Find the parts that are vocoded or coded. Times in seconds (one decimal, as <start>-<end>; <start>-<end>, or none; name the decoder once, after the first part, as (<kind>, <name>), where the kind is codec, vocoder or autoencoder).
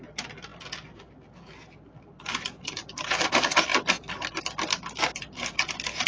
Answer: none